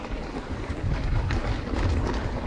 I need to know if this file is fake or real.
fake